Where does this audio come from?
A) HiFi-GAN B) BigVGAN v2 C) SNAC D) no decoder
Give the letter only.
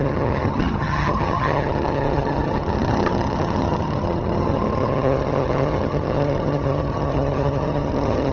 A